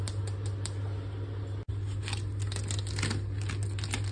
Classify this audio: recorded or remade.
recorded